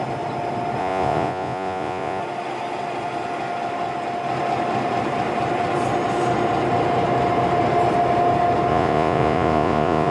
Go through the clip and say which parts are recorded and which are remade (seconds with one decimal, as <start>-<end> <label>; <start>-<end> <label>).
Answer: 0.0-0.8 recorded; 0.8-2.2 remade; 2.2-8.7 recorded; 8.7-10.1 remade